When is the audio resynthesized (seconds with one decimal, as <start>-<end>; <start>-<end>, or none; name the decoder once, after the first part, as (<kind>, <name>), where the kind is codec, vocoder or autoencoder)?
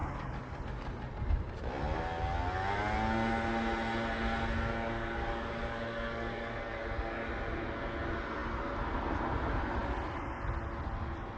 0.0-0.6 (codec, DAC); 4.7-7.3